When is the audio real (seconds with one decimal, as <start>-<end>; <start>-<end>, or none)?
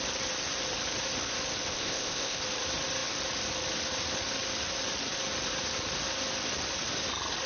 0.0-1.7; 2.4-7.5